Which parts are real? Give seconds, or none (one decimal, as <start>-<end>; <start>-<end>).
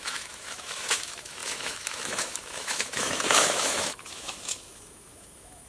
none